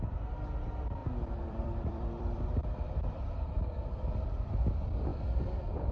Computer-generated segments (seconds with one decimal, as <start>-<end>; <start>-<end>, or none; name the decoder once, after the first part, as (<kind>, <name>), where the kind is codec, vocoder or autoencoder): 1.0-4.4 (vocoder, BigVGAN v2); 5.1-5.9